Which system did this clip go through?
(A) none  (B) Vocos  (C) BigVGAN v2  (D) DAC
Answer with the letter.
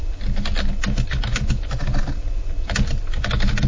A